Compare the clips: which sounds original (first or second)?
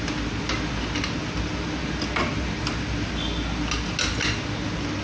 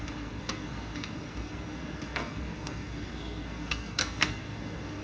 first